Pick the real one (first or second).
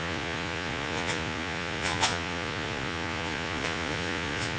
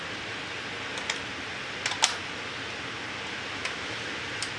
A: second